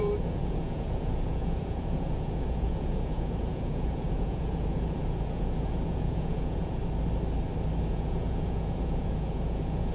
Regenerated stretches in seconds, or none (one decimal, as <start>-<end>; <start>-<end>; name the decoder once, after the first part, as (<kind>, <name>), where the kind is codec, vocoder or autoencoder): 0.0-6.8 (vocoder, Vocos); 7.8-9.9